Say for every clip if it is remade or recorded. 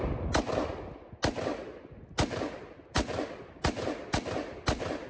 recorded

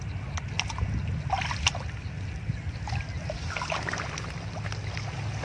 recorded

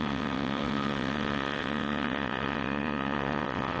remade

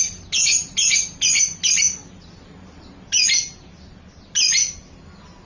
recorded